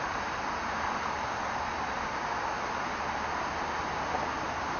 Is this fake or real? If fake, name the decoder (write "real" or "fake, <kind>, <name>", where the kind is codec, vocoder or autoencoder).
real